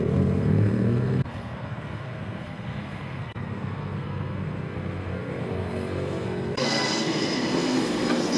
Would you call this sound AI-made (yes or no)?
yes